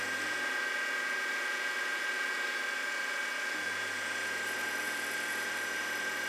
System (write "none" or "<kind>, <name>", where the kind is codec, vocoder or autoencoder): none